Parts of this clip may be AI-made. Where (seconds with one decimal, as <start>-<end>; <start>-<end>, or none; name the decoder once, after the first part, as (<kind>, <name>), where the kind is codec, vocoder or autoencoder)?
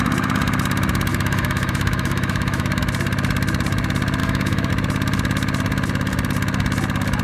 1.1-2.8 (autoencoder, DAC-VAE); 4.2-4.7